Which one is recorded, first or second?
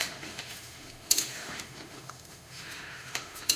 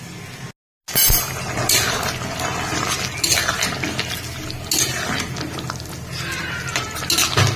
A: second